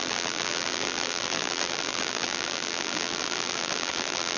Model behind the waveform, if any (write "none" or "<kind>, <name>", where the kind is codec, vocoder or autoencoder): vocoder, BigVGAN v2